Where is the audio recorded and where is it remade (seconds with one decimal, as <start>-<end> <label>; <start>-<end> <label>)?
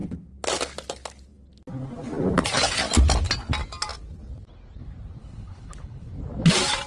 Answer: 0.0-5.2 recorded; 5.2-6.1 remade; 6.1-6.9 recorded